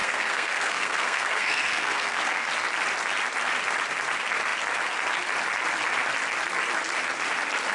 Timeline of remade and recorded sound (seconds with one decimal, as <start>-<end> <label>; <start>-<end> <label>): 0.0-2.5 remade; 2.5-7.7 recorded